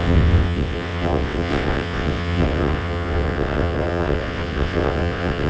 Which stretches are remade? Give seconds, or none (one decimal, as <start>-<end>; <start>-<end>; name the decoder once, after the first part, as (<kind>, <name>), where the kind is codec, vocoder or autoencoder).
0.0-5.5 (vocoder, WaveNeXt)